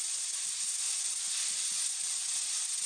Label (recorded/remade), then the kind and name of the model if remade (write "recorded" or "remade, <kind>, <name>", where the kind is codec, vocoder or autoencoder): recorded